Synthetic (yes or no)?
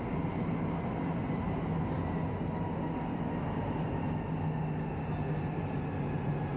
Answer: no